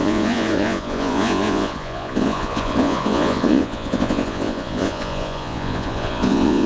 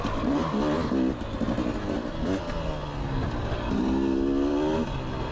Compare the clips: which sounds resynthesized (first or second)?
first